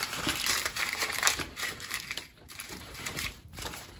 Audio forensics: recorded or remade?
remade